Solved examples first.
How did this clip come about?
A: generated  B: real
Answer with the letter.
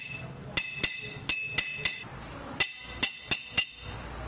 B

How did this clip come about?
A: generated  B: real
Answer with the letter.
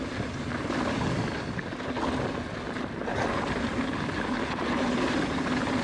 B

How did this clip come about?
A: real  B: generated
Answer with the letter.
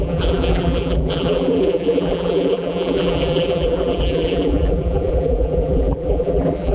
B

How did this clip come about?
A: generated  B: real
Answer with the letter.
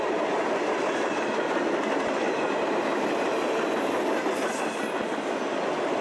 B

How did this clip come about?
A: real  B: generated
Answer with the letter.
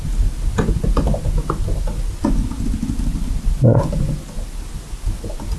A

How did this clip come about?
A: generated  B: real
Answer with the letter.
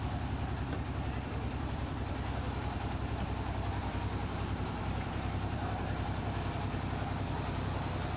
A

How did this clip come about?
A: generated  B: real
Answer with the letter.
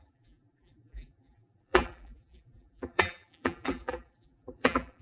A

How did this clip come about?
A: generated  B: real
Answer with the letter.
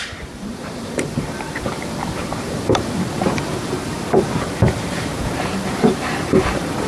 A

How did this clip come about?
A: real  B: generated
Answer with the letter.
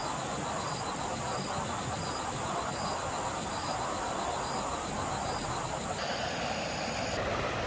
A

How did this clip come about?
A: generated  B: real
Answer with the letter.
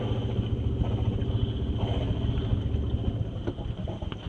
B